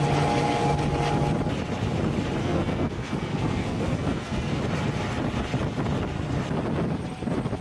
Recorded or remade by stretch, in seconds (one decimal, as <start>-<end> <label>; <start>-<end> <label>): 0.0-2.4 recorded; 2.4-4.6 remade; 4.6-7.6 recorded